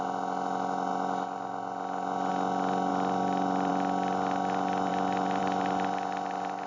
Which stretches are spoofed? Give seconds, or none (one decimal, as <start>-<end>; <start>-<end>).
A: none